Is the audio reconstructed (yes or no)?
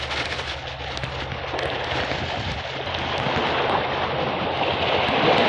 no